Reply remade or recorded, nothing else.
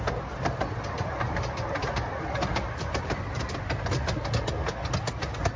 recorded